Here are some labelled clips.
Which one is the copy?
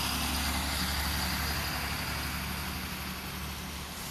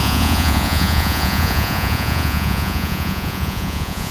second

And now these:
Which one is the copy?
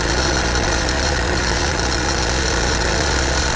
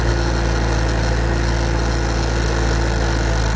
first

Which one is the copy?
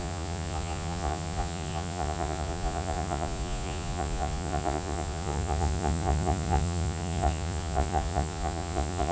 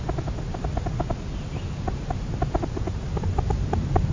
first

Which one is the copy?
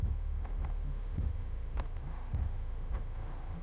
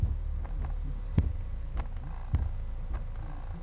first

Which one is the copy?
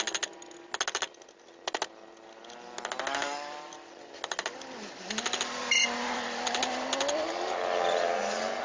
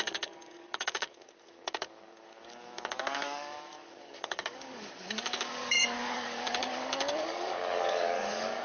second